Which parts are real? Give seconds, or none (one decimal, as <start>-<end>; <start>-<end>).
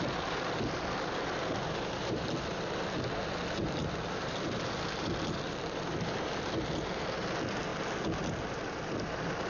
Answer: 7.7-9.5